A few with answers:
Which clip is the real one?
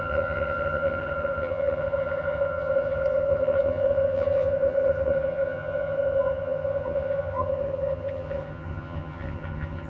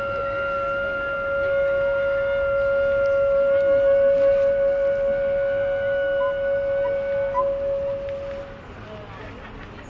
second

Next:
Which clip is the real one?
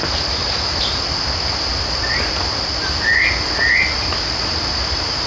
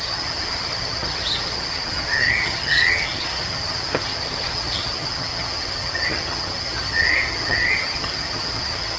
first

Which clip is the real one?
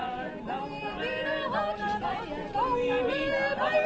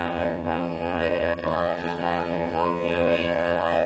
first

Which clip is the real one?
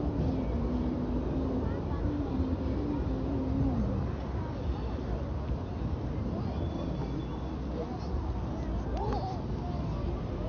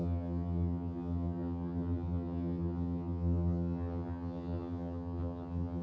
first